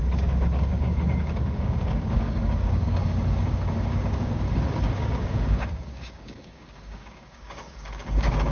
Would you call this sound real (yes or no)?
no